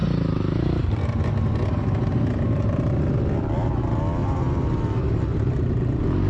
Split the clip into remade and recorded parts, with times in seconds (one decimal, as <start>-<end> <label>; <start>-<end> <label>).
0.0-3.0 remade; 3.0-4.2 recorded; 4.2-4.8 remade; 4.8-6.3 recorded